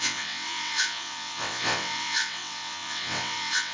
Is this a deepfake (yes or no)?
yes